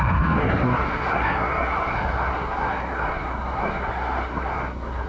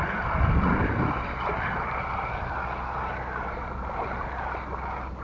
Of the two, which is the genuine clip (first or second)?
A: second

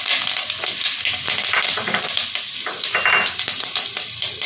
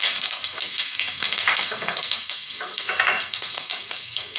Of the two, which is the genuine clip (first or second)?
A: first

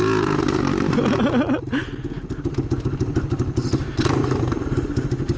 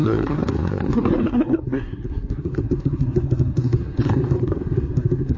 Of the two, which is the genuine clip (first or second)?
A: first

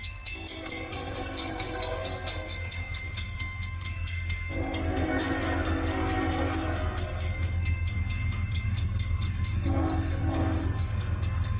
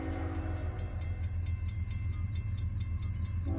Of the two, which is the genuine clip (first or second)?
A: second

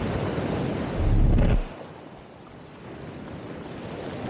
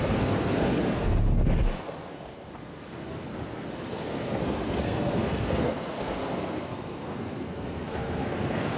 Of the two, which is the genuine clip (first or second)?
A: first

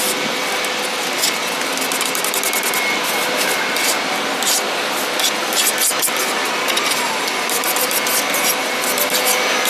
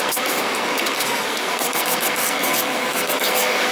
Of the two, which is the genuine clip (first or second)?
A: first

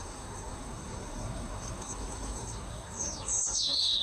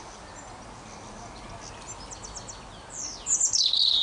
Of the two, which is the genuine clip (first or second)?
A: second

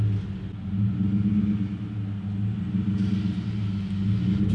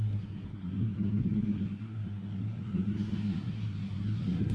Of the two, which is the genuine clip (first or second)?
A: first